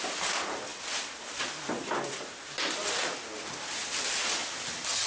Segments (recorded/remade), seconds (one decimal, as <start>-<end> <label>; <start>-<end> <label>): 0.0-0.7 recorded; 0.7-2.1 remade; 2.1-5.1 recorded

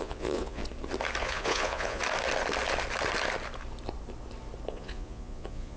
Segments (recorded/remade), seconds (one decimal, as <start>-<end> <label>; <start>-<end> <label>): 0.0-0.6 remade; 0.6-1.2 recorded; 1.2-2.0 remade; 2.0-4.7 recorded; 4.7-5.8 remade

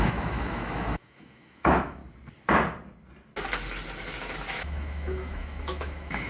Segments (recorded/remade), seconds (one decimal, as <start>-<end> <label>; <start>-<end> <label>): 0.0-2.0 remade; 2.0-4.5 recorded; 4.5-6.3 remade

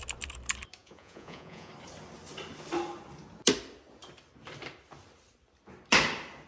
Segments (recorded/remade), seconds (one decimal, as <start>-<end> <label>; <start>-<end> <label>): 0.0-0.8 recorded; 0.8-1.7 remade; 1.7-6.5 recorded

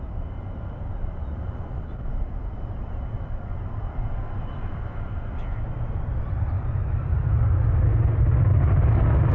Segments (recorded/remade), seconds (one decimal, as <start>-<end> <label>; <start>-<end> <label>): 0.0-9.3 recorded

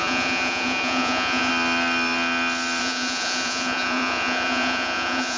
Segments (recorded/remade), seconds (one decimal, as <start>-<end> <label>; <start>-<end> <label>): 0.0-1.5 remade; 1.5-2.8 recorded; 2.8-5.4 remade

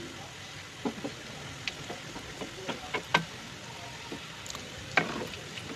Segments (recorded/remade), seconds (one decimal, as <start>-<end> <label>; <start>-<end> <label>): 0.0-5.8 recorded

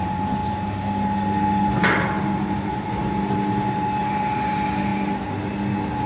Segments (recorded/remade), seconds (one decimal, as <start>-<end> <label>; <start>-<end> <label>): 0.0-6.1 recorded